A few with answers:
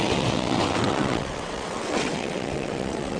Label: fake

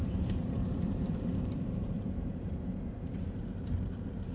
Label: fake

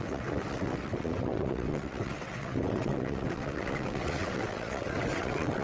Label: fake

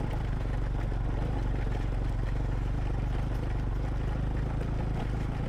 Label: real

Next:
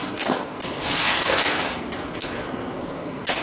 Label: fake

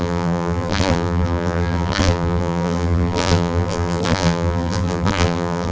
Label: fake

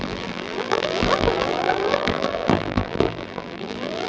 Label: fake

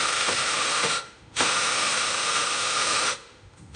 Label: fake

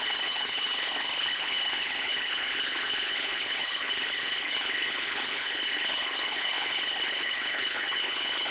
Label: fake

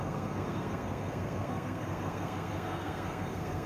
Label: fake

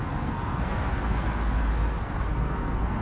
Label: fake